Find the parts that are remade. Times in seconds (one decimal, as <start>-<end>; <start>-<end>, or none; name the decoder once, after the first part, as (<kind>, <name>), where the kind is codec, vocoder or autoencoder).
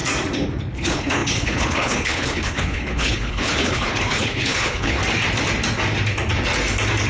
0.6-5.0 (codec, HILCodec)